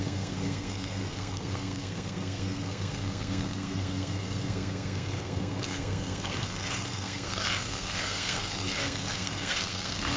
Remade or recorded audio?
remade